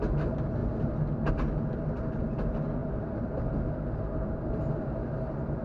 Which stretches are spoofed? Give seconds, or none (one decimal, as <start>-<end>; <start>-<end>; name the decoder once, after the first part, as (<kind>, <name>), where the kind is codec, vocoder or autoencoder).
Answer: 2.8-5.1 (vocoder, BigVGAN v2)